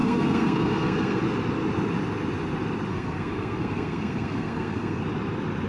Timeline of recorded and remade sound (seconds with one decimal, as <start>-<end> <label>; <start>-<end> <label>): 0.0-1.2 remade; 1.2-2.9 recorded; 2.9-5.0 remade; 5.0-5.7 recorded